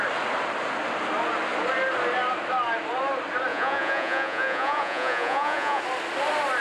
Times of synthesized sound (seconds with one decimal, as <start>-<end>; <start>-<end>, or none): 3.5-5.8